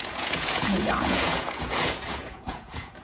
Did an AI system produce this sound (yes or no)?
yes